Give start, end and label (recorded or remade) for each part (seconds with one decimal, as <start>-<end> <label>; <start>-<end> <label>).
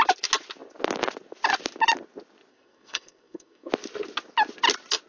0.0-2.5 recorded; 2.5-3.7 remade; 3.7-5.1 recorded